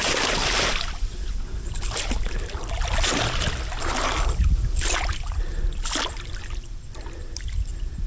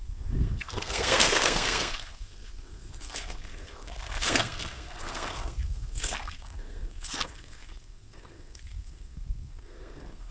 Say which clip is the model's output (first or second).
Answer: second